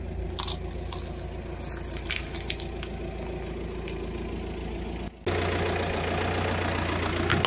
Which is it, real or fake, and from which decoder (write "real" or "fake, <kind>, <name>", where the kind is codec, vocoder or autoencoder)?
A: real